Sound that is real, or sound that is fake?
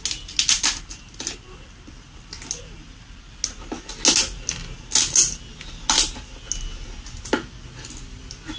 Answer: real